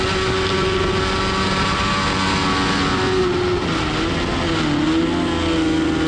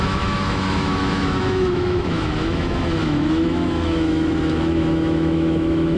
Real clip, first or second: first